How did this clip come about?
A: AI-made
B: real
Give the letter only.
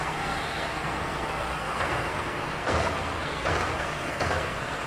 A